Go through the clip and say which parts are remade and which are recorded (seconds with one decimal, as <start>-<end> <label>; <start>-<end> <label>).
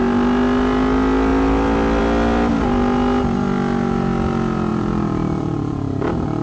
0.0-4.7 recorded; 4.7-5.9 remade; 5.9-6.4 recorded